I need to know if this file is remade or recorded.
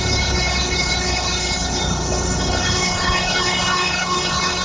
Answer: remade